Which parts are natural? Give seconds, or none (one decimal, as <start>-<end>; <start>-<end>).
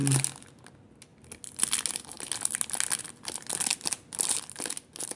0.0-5.2